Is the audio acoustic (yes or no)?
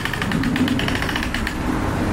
yes